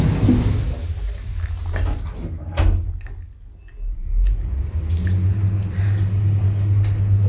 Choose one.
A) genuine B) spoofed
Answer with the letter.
A